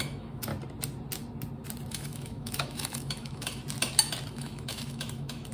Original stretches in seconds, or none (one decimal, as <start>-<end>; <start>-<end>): 0.5-1.9; 3.6-4.3